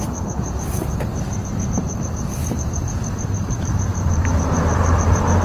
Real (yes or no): no